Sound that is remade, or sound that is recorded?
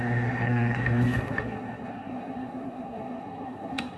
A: remade